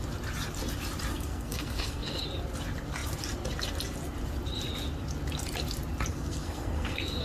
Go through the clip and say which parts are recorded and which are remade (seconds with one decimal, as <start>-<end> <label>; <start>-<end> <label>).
0.0-1.1 recorded; 1.1-2.2 remade; 2.2-6.1 recorded; 6.1-7.2 remade

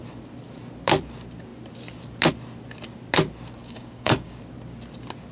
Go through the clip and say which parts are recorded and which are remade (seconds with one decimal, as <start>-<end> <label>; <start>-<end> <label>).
0.0-3.6 recorded; 3.6-4.4 remade; 4.4-5.3 recorded

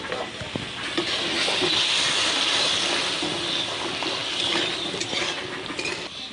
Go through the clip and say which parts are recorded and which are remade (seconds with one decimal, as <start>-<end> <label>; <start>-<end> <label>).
0.0-6.3 recorded

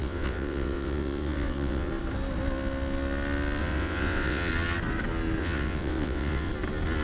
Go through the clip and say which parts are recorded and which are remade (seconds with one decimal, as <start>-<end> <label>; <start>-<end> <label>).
0.0-1.9 remade; 1.9-3.6 recorded; 3.6-4.5 remade; 4.5-5.4 recorded; 5.4-6.5 remade; 6.5-7.0 recorded

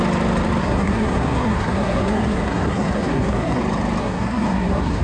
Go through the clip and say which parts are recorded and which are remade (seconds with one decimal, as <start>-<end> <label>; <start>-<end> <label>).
0.0-0.6 recorded; 0.6-3.6 remade; 3.6-4.0 recorded; 4.0-5.0 remade

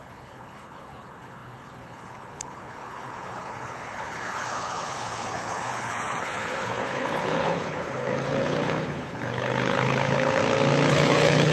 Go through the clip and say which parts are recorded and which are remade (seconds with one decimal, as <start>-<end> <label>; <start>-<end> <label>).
0.0-10.4 remade; 10.4-10.9 recorded; 10.9-11.5 remade

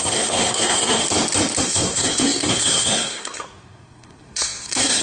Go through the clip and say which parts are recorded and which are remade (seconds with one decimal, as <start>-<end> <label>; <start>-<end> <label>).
0.0-1.0 remade; 1.0-1.6 recorded; 1.6-5.0 remade